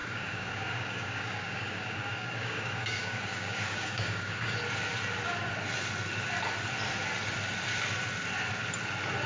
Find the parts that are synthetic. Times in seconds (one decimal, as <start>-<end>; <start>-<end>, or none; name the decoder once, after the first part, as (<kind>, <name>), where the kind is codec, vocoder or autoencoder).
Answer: 0.0-4.5 (codec, DAC)